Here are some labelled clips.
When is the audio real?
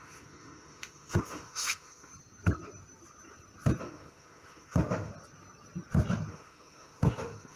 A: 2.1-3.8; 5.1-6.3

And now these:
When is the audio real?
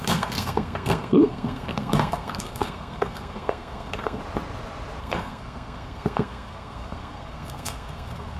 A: 4.2-5.0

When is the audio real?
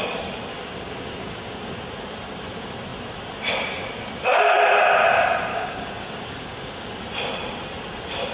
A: 0.0-0.5; 1.9-5.5; 7.0-8.3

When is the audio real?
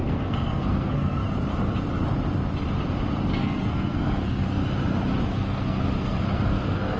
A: 1.2-3.3; 4.6-5.2